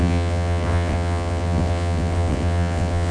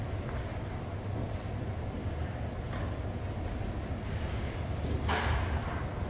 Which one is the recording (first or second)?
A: second